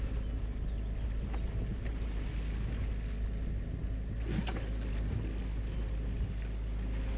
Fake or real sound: real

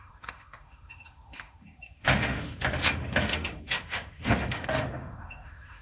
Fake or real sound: fake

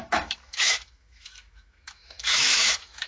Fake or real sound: fake